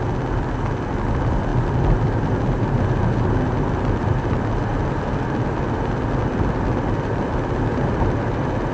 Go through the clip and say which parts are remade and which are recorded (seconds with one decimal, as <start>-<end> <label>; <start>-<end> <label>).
0.0-8.7 recorded